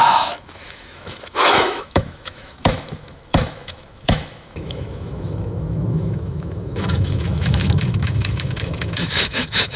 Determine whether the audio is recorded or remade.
remade